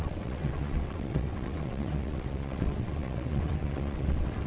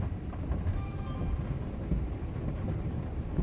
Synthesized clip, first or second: first